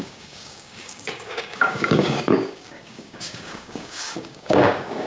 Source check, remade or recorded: remade